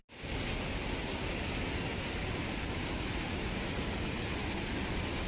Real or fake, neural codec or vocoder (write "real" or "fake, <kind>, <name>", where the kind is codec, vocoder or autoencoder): real